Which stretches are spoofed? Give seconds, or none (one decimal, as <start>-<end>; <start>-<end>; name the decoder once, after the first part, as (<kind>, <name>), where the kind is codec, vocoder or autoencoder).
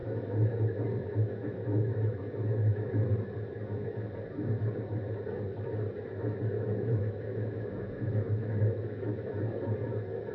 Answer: 0.0-0.6 (autoencoder, DAC-VAE); 1.0-3.1; 6.3-9.4